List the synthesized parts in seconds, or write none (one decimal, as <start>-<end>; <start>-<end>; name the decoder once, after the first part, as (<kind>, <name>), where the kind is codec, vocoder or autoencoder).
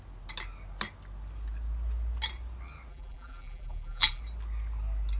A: 2.9-4.2 (vocoder, BigVGAN v2)